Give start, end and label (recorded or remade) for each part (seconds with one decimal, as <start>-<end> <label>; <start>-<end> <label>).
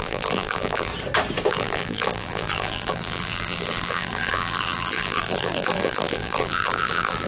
0.0-0.9 remade; 0.9-1.5 recorded; 1.5-7.3 remade